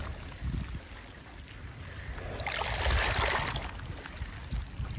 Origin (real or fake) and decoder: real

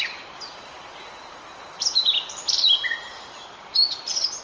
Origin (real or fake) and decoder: real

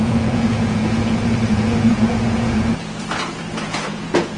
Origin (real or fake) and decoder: fake, vocoder, Vocos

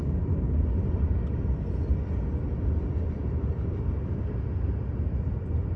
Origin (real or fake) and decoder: real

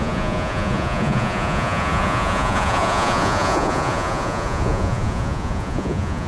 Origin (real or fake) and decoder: fake, vocoder, Vocos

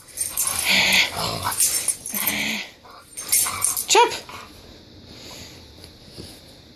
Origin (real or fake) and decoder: real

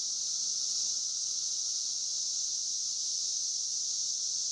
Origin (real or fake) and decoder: real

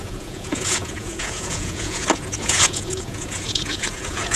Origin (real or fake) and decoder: fake, vocoder, Vocos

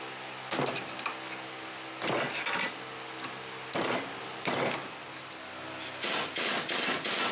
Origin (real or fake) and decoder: real